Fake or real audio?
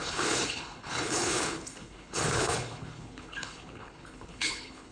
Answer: fake